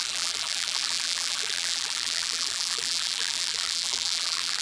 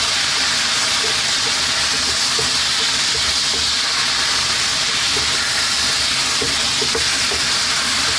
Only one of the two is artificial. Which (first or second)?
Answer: first